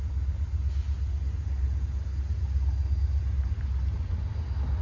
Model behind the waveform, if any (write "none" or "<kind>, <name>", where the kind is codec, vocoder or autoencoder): none